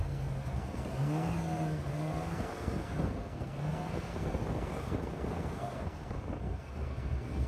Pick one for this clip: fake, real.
fake